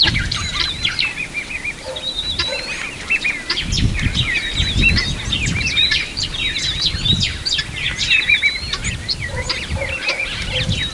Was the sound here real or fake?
real